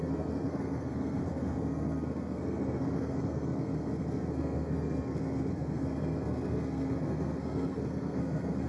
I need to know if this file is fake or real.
fake